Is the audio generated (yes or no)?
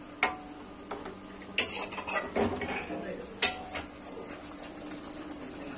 no